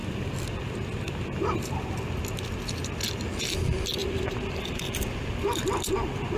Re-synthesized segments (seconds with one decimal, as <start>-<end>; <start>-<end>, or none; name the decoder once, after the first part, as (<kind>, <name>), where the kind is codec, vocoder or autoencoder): none